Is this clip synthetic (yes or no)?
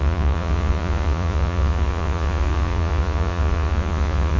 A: yes